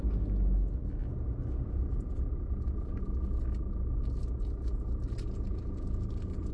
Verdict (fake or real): real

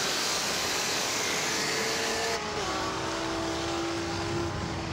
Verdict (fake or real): fake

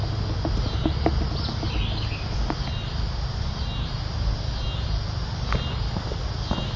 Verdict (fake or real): real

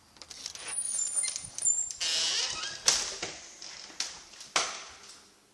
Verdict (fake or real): real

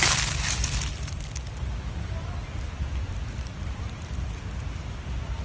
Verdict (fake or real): real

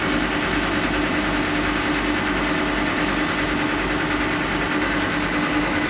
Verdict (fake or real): real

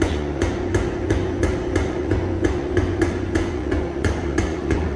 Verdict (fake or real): fake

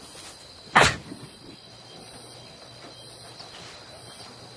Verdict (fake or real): real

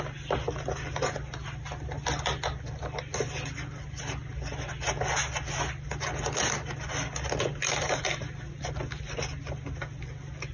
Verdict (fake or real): real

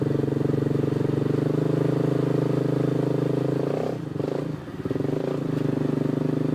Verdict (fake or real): real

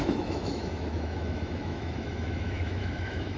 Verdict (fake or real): fake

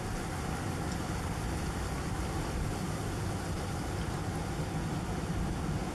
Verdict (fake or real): real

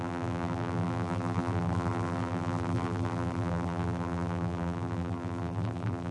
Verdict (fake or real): fake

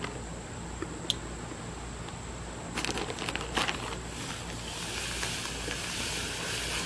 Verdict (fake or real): real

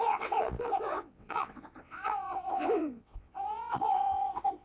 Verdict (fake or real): fake